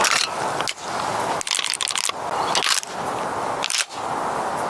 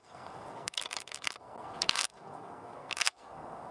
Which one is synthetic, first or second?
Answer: second